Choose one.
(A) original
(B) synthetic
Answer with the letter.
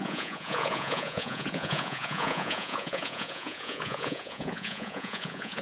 B